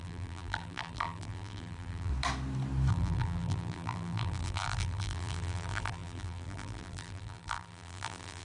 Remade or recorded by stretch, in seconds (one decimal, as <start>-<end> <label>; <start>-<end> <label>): 0.0-2.1 remade; 2.1-2.9 recorded; 2.9-8.4 remade